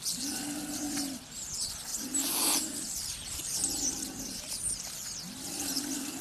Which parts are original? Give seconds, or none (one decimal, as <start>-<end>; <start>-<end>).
0.0-1.9; 4.9-6.2